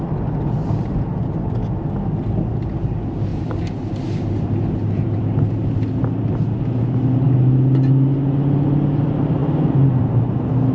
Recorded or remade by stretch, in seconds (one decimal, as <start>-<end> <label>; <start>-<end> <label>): 0.0-3.3 recorded; 3.3-3.9 remade; 3.9-9.4 recorded; 9.4-10.0 remade; 10.0-10.7 recorded